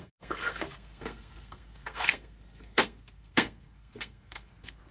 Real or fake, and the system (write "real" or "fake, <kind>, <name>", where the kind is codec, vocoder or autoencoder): fake, codec, SNAC